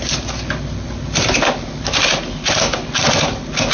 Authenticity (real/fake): real